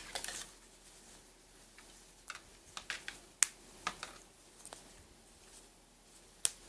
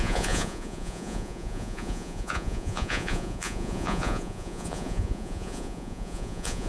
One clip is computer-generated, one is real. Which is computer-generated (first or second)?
second